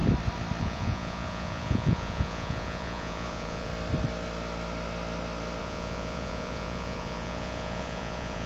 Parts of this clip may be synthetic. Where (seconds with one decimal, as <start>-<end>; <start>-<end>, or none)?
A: 0.6-3.7; 5.6-8.5